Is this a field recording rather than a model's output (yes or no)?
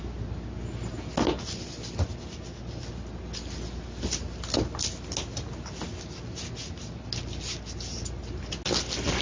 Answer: yes